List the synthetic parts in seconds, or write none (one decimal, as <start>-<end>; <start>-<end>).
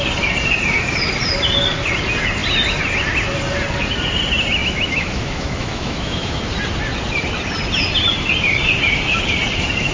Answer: 4.6-6.4